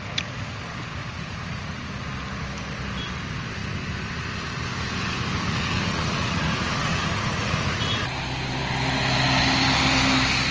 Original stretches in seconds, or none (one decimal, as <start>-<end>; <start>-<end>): 0.0-1.0; 2.1-5.5; 7.8-10.5